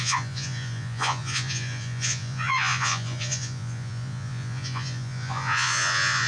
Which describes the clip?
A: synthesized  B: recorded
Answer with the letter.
A